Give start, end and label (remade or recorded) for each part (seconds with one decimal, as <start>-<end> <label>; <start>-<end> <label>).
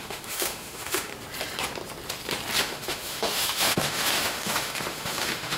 0.0-1.1 remade; 1.1-2.6 recorded; 2.6-5.6 remade